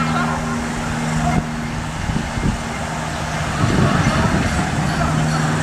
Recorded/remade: recorded